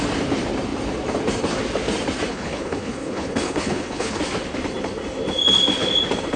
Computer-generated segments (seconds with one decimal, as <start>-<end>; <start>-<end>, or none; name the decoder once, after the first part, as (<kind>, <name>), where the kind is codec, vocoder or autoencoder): 2.3-4.2 (codec, HILCodec)